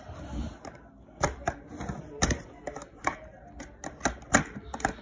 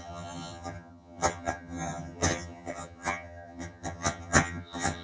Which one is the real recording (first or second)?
first